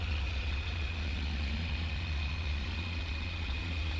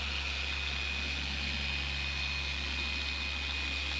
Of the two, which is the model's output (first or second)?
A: first